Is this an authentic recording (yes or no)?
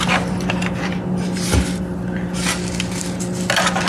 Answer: yes